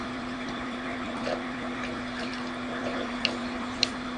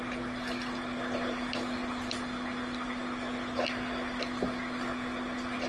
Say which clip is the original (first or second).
second